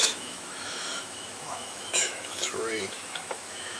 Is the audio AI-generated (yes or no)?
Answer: yes